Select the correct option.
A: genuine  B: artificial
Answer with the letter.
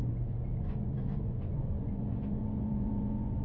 B